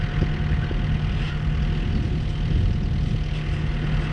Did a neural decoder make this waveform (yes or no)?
no